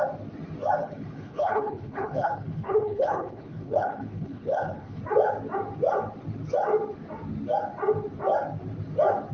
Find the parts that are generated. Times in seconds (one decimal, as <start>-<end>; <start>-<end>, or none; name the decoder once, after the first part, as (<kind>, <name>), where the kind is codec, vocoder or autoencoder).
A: 0.8-5.0 (codec, HILCodec)